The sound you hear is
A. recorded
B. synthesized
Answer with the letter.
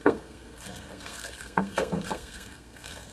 B